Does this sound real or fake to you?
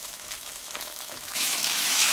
fake